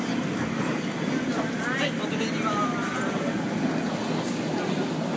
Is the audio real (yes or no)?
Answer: yes